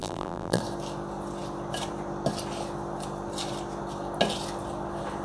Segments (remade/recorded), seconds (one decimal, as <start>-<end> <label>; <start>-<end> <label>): 0.0-0.6 remade; 0.6-5.2 recorded

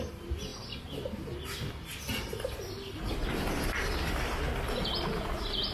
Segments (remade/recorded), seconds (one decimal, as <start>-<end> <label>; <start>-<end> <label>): 0.0-5.7 recorded

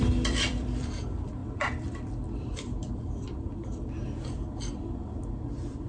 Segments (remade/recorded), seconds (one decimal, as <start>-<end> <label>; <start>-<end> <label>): 0.0-5.9 remade

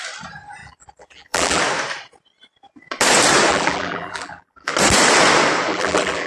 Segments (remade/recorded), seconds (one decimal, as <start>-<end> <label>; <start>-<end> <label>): 0.0-0.6 recorded; 0.6-1.6 remade; 1.6-3.5 recorded; 3.5-4.7 remade; 4.7-5.7 recorded; 5.7-6.3 remade

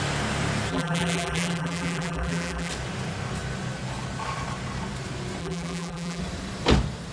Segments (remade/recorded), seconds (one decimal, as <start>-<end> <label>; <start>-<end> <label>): 0.0-0.7 recorded; 0.7-2.7 remade; 2.7-5.4 recorded; 5.4-6.2 remade; 6.2-7.1 recorded

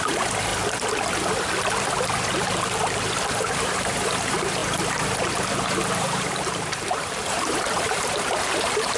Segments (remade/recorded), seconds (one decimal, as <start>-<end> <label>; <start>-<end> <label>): 0.0-0.5 remade; 0.5-3.3 recorded; 3.3-9.0 remade